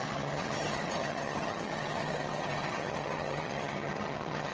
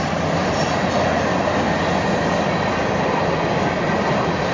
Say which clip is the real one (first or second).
second